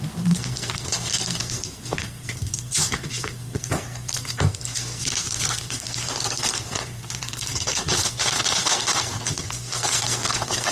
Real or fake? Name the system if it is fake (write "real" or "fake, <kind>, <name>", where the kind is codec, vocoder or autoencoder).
fake, codec, SNAC